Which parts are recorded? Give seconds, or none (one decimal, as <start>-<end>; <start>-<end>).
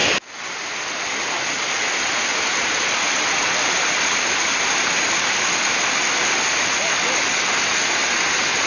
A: 0.0-8.7